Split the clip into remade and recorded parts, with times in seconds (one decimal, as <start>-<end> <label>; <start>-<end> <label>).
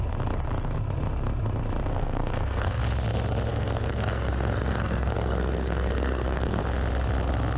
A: 0.0-1.9 recorded; 1.9-2.8 remade; 2.8-3.5 recorded; 3.5-6.6 remade; 6.6-7.6 recorded